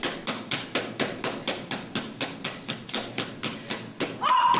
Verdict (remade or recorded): recorded